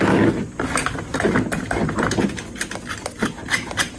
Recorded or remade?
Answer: recorded